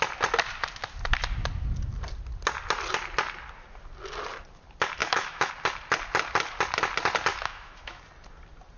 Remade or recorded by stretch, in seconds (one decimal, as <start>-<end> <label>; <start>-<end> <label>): 0.0-5.0 recorded; 5.0-5.5 remade; 5.5-7.3 recorded; 7.3-8.0 remade; 8.0-8.8 recorded